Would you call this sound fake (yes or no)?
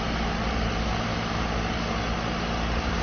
no